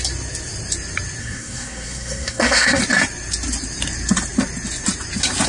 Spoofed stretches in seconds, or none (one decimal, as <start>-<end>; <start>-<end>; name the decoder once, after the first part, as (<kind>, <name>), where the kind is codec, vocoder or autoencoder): 1.2-2.8 (codec, SNAC)